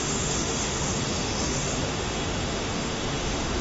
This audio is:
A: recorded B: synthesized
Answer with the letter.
B